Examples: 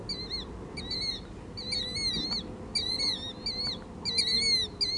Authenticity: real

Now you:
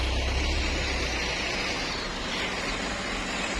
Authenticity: real